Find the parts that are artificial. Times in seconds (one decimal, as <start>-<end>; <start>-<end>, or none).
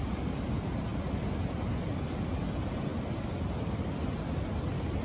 none